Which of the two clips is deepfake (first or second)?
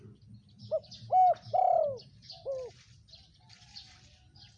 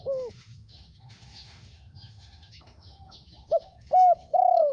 second